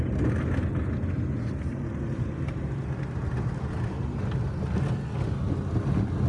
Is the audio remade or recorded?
recorded